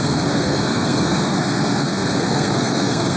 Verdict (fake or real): fake